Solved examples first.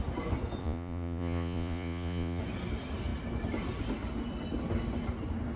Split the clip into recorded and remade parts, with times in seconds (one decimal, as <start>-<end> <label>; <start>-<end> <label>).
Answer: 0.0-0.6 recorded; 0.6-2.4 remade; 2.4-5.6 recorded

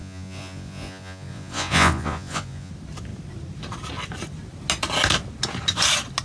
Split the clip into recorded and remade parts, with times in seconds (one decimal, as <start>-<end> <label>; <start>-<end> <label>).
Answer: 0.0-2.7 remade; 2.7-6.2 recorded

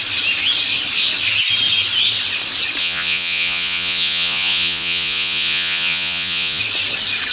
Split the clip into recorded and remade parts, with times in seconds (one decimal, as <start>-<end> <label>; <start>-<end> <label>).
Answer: 0.0-2.8 recorded; 2.8-6.6 remade; 6.6-7.3 recorded

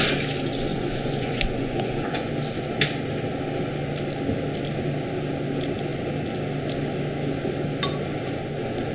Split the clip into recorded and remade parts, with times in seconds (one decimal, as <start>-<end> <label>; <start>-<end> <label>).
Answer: 0.0-0.7 recorded; 0.7-2.3 remade; 2.3-8.9 recorded

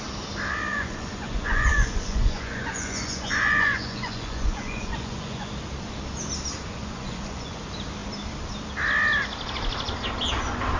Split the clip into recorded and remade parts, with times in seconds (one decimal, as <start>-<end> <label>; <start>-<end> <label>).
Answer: 0.0-0.7 recorded; 0.7-5.5 remade; 5.5-6.7 recorded; 6.7-7.6 remade; 7.6-10.8 recorded

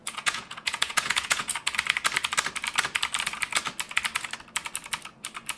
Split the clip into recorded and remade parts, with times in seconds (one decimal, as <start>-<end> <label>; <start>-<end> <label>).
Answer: 0.0-1.6 remade; 1.6-5.6 recorded

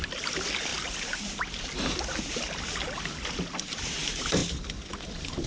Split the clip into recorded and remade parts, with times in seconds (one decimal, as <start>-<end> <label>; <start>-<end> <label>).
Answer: 0.0-5.5 recorded